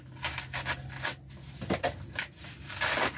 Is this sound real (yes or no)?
yes